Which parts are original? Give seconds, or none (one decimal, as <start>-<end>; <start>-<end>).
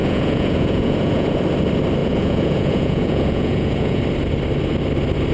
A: 1.4-2.0; 4.0-5.3